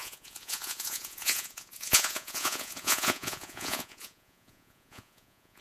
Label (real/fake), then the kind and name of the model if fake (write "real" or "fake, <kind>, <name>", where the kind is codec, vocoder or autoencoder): fake, vocoder, Vocos